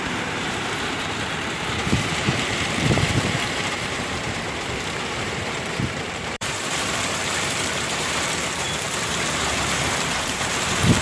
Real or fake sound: fake